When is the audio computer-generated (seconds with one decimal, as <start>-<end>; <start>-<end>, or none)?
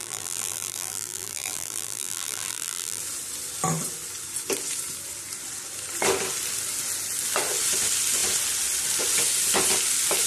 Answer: 0.0-3.0